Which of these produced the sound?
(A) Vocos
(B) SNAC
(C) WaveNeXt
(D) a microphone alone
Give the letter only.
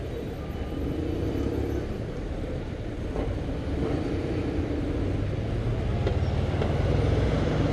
D